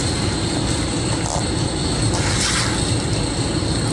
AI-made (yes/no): no